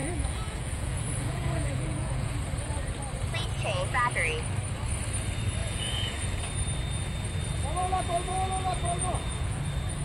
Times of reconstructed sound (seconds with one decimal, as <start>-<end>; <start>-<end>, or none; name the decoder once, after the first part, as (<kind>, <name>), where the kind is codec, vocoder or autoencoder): 0.0-2.3 (vocoder, Vocos); 5.6-6.4; 7.8-9.6